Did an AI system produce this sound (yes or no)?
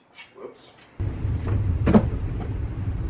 no